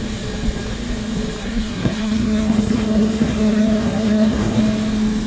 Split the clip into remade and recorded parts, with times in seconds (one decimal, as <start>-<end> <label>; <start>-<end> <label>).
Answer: 0.0-1.4 recorded; 1.4-4.6 remade; 4.6-5.3 recorded